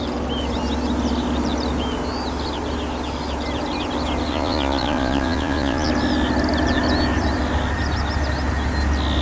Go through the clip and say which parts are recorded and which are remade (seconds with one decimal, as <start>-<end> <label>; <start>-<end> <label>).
0.0-4.3 recorded; 4.3-5.9 remade; 5.9-9.2 recorded